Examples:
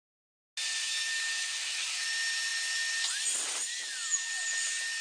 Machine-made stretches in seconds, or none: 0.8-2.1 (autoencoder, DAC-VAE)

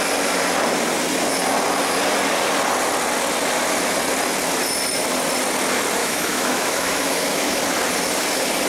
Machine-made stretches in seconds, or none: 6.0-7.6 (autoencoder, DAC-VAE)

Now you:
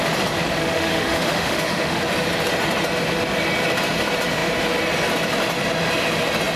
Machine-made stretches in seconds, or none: 0.6-2.0 (autoencoder, DAC-VAE)

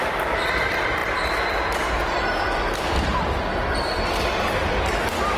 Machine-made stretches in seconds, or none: none

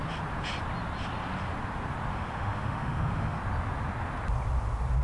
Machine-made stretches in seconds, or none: 2.1-3.4 (autoencoder, DAC-VAE)

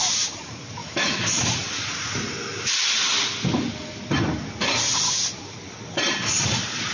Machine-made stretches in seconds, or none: 0.8-1.3 (autoencoder, DAC-VAE)